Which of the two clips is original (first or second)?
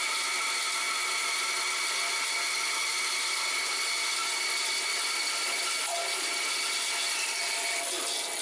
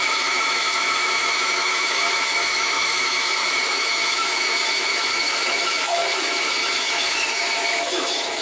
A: first